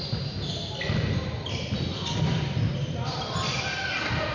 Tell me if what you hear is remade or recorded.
recorded